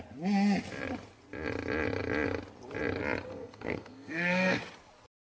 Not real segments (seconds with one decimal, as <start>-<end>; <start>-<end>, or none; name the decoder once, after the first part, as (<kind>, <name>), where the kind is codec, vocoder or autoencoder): 3.3-4.6 (codec, SNAC)